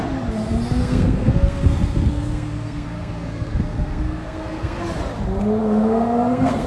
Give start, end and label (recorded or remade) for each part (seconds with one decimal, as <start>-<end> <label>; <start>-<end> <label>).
0.0-0.8 recorded; 0.8-4.8 remade; 4.8-5.6 recorded; 5.6-6.7 remade